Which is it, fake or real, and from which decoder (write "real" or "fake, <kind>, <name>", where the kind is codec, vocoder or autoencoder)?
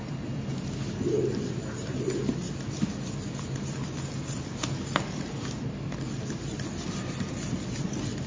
real